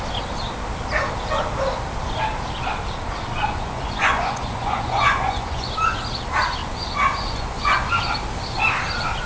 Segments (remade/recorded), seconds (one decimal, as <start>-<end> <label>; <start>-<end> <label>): 0.0-3.4 recorded; 3.4-5.7 remade; 5.7-6.6 recorded; 6.6-8.0 remade; 8.0-9.3 recorded